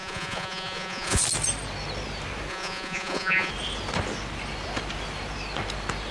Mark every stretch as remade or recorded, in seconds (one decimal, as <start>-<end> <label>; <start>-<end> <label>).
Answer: 0.0-1.2 remade; 1.2-2.5 recorded; 2.5-3.5 remade; 3.5-6.1 recorded